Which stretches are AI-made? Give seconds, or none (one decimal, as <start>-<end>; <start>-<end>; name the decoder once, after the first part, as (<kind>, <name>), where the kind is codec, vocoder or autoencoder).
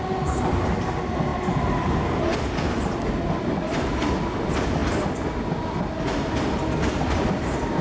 none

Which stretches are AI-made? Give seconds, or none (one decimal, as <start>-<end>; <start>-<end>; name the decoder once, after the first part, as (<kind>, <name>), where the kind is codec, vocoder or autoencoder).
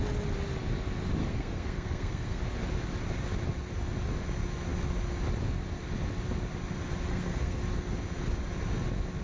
1.2-2.4 (codec, SNAC); 7.1-7.6